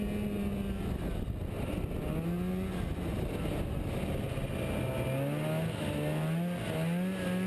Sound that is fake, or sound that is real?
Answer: real